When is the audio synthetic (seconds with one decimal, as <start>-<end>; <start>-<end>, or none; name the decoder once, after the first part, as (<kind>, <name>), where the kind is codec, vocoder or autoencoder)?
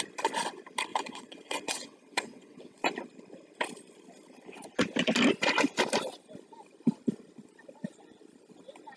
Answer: 0.9-2.8 (vocoder, WaveNeXt)